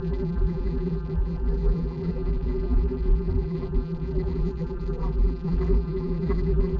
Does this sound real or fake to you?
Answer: fake